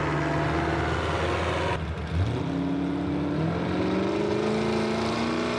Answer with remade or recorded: recorded